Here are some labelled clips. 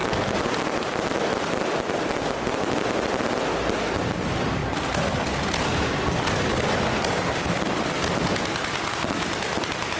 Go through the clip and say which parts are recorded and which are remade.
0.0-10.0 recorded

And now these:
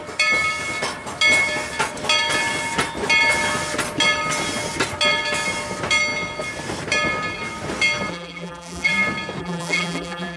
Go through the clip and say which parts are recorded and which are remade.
0.0-8.1 recorded; 8.1-8.9 remade; 8.9-9.4 recorded; 9.4-10.4 remade

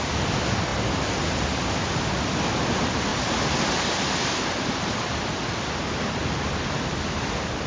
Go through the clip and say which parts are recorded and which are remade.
0.0-7.7 recorded

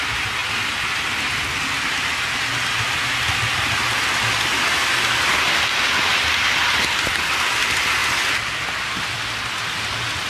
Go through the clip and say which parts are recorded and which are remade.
0.0-10.3 recorded

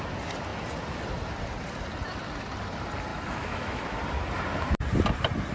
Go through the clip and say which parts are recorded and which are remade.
0.0-3.1 recorded; 3.1-4.0 remade; 4.0-5.5 recorded